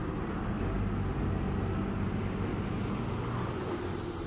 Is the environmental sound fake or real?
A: real